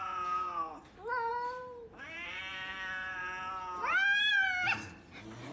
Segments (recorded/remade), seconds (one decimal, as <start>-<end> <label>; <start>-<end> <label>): 0.0-1.3 recorded; 1.3-2.4 remade; 2.4-5.5 recorded